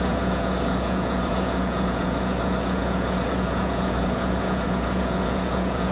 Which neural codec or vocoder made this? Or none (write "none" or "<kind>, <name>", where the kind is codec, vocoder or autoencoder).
vocoder, Vocos